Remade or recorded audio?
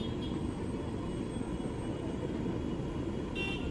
recorded